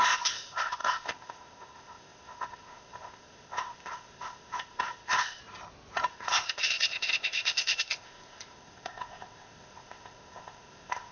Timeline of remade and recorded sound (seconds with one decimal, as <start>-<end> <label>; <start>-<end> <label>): 0.0-5.4 remade; 5.4-6.1 recorded; 6.1-11.1 remade